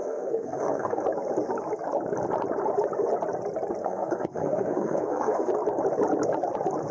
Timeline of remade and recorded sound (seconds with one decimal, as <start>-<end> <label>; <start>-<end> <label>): 0.0-1.0 remade; 1.0-3.8 recorded; 3.8-5.5 remade; 5.5-6.9 recorded